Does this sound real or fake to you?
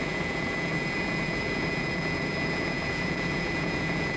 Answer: fake